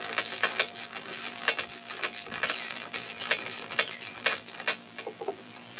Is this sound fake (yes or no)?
yes